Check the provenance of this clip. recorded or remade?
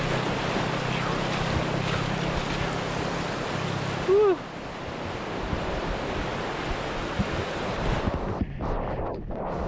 recorded